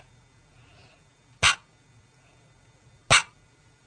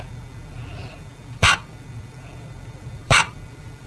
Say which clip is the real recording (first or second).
first